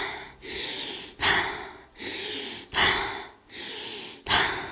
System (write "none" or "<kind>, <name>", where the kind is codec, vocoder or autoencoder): none